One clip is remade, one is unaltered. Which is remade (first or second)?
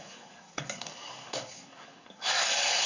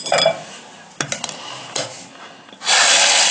first